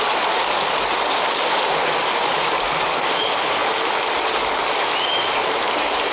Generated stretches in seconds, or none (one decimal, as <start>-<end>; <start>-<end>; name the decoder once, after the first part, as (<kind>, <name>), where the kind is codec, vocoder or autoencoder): 0.0-3.6 (vocoder, BigVGAN v2); 5.3-6.1